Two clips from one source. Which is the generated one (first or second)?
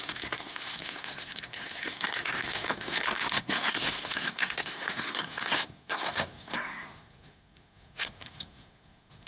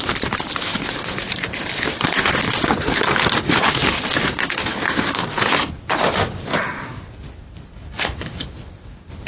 first